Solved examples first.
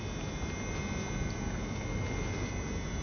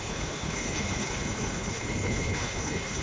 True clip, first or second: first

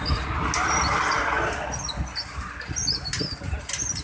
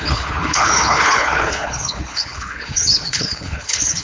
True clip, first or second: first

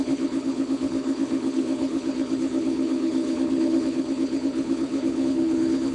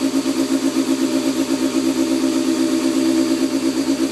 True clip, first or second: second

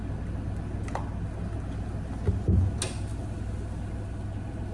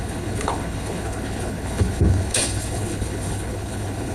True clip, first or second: first